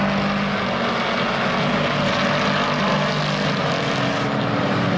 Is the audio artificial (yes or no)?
no